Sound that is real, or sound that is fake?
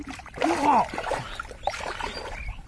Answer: real